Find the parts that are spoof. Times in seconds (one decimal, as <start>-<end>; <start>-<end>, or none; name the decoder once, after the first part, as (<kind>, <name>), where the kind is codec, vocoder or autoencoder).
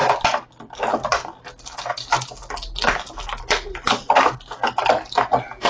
none